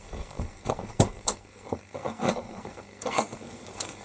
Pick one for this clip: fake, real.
fake